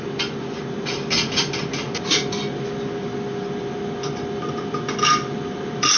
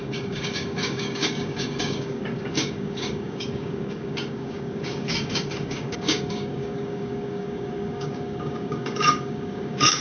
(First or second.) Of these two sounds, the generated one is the second